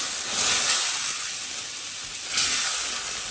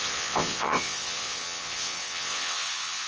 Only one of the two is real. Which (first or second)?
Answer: first